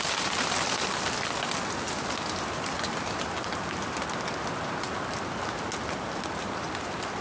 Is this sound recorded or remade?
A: recorded